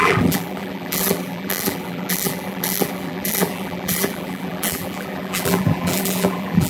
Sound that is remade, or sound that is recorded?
remade